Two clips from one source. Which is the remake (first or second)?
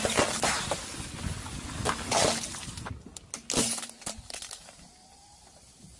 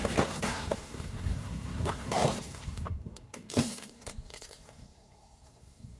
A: second